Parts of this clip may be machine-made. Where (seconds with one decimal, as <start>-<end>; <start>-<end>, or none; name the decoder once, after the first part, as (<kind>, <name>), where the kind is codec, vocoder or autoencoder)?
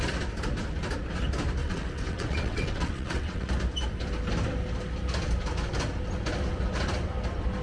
1.6-3.5 (vocoder, WaveNeXt)